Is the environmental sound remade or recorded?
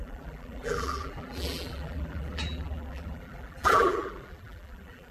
remade